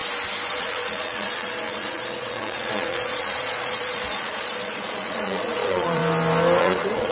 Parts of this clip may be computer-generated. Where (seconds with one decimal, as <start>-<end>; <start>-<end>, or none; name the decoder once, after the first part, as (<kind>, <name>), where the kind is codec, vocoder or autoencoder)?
0.5-6.0 (vocoder, Vocos); 6.6-7.1